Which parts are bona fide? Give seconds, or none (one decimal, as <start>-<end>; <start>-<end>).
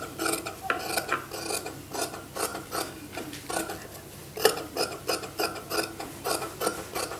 0.0-4.2; 4.9-7.2